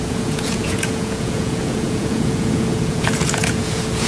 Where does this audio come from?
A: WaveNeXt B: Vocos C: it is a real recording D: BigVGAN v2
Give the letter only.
B